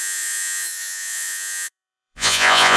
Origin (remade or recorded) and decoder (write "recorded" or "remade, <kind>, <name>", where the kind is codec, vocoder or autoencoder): remade, vocoder, Vocos